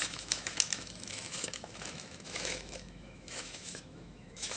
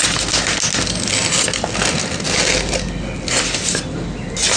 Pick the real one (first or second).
second